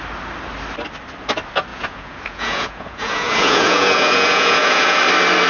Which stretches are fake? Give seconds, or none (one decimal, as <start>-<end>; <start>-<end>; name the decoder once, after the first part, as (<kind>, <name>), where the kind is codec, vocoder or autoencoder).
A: 1.7-5.0 (vocoder, Vocos)